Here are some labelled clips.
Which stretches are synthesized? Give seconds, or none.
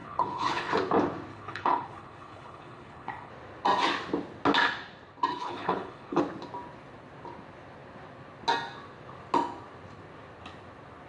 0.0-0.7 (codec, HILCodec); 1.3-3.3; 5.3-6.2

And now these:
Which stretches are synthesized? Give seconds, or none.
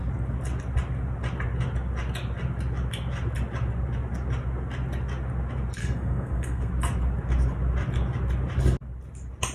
5.8-6.7 (codec, SNAC)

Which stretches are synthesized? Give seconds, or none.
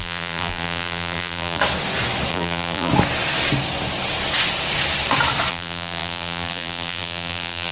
0.0-1.6 (vocoder, BigVGAN v2); 2.3-2.9; 5.5-7.7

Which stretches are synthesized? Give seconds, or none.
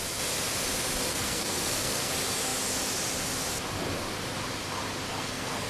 1.1-2.1 (codec, SNAC); 5.1-5.7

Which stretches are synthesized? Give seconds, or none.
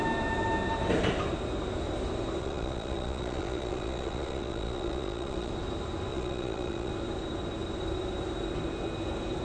2.4-5.5 (vocoder, Vocos); 6.1-6.9